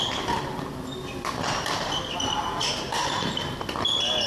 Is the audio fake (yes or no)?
no